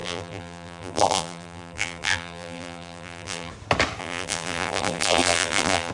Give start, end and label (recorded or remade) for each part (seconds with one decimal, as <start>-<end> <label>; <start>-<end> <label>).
0.0-3.5 remade; 3.5-4.0 recorded; 4.0-5.9 remade